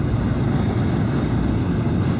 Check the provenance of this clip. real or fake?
real